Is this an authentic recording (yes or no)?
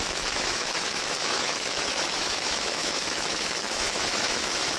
no